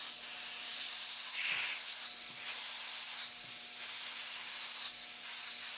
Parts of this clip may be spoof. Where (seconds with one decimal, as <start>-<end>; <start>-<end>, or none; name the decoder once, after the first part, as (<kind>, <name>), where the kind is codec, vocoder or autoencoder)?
none